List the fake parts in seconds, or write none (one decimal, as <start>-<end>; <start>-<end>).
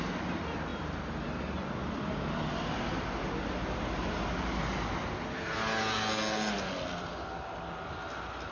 none